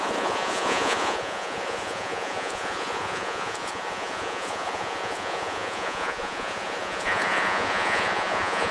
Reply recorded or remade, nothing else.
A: remade